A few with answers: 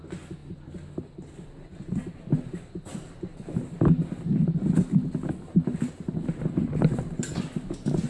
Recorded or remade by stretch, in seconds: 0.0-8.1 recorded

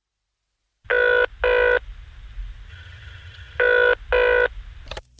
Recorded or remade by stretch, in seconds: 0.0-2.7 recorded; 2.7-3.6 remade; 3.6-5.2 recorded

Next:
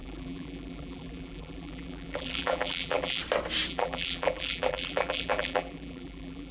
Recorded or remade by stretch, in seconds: 0.0-3.2 remade; 3.2-3.7 recorded; 3.7-6.5 remade

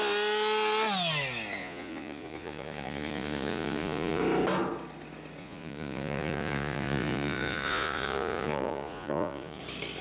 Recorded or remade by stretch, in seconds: 0.0-1.6 recorded; 1.6-4.2 remade; 4.2-5.4 recorded; 5.4-9.6 remade; 9.6-10.0 recorded

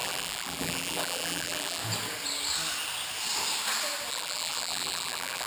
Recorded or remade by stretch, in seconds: 0.0-1.8 remade; 1.8-4.1 recorded; 4.1-5.5 remade